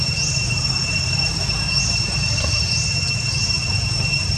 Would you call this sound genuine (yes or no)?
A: no